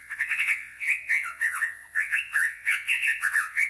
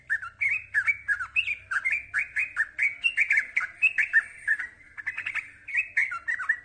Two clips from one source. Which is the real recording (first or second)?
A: second